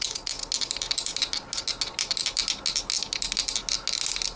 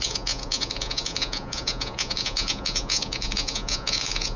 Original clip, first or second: first